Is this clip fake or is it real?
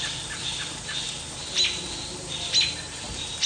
real